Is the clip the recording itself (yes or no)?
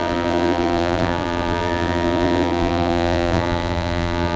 no